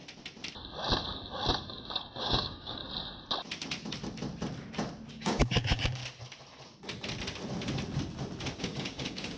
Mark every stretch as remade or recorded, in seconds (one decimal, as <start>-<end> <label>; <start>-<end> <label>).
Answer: 0.0-2.2 recorded; 2.2-2.8 remade; 2.8-5.1 recorded; 5.1-6.0 remade; 6.0-8.6 recorded; 8.6-9.4 remade